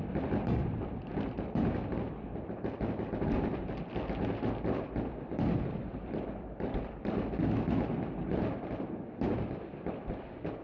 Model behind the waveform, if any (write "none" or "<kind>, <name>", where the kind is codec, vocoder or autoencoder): vocoder, BigVGAN v2